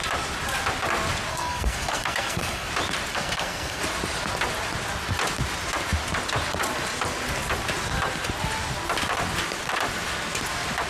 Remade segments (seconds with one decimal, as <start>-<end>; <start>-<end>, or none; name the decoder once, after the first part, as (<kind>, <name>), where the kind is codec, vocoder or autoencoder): 1.3-2.7 (codec, SNAC); 3.1-3.8